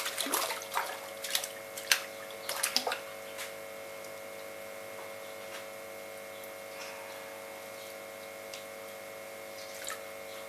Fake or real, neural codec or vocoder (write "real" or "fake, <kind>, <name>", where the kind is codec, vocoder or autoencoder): real